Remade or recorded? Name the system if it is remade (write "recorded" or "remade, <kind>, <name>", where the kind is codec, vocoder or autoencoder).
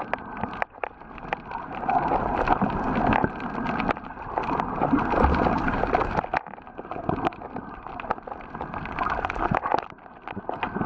recorded